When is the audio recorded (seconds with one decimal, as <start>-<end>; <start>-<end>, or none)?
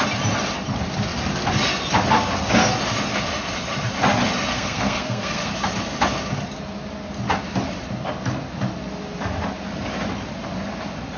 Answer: 0.0-4.5; 5.5-11.2